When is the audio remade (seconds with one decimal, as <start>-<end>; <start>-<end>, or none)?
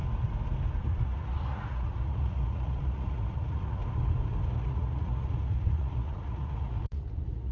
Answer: 0.8-3.8; 4.6-7.5